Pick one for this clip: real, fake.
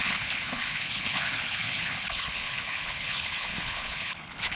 fake